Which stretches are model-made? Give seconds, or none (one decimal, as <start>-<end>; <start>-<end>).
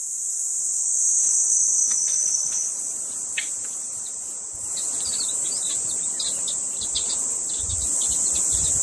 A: none